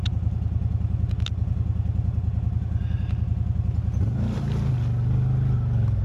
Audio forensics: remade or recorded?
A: recorded